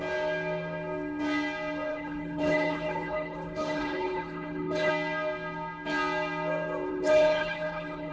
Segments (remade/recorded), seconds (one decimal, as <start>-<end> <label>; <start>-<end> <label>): 0.0-1.9 recorded; 1.9-4.9 remade; 4.9-6.9 recorded; 6.9-8.1 remade

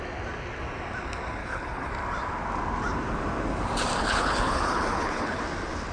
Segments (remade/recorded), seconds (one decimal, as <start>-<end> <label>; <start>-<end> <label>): 0.0-1.4 recorded; 1.4-1.9 remade; 1.9-4.0 recorded; 4.0-5.4 remade; 5.4-5.9 recorded

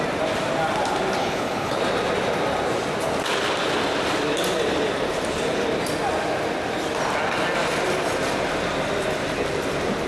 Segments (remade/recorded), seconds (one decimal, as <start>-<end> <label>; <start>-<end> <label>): 0.0-1.2 recorded; 1.2-1.8 remade; 1.8-10.1 recorded

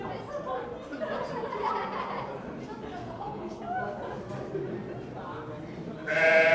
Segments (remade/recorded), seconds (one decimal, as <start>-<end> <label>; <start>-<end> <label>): 0.0-3.0 recorded; 3.0-3.6 remade; 3.6-6.5 recorded

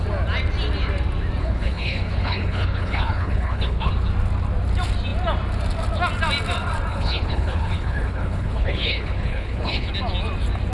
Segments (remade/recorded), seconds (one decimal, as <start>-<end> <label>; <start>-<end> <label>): 0.0-1.4 recorded; 1.4-3.9 remade; 3.9-6.9 recorded; 6.9-9.9 remade; 9.9-10.7 recorded

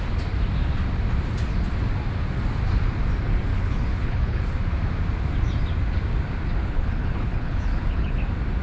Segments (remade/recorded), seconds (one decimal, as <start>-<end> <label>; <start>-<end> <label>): 0.0-3.5 recorded; 3.5-4.4 remade; 4.4-6.6 recorded; 6.6-8.2 remade; 8.2-8.6 recorded

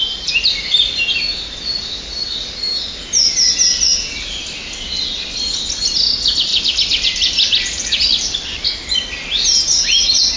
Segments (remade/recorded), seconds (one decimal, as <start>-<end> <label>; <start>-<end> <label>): 0.0-10.4 recorded

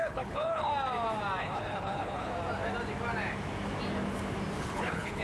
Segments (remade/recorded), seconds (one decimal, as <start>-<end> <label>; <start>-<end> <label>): 0.0-0.7 remade; 0.7-1.4 recorded; 1.4-2.3 remade; 2.3-4.6 recorded; 4.6-5.2 remade